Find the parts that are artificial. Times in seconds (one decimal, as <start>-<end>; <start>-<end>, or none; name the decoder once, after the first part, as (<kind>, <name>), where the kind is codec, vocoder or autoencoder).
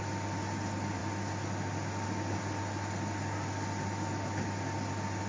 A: none